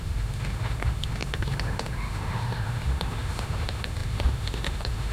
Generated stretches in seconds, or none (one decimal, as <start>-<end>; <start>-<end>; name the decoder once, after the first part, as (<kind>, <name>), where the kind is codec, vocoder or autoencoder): 0.0-5.1 (autoencoder, DAC-VAE)